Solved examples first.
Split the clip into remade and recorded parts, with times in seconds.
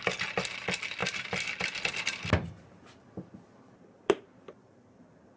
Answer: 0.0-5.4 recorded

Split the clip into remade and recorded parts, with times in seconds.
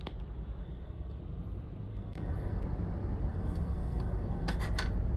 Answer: 0.0-0.6 recorded; 0.6-1.2 remade; 1.2-1.9 recorded; 1.9-2.6 remade; 2.6-3.3 recorded; 3.3-4.6 remade; 4.6-5.2 recorded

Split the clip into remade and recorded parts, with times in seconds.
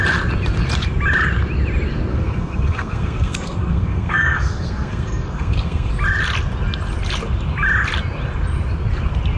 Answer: 0.0-2.1 recorded; 2.1-5.9 remade; 5.9-9.4 recorded